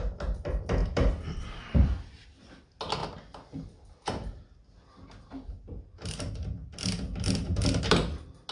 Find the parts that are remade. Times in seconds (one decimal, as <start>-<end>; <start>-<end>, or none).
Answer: none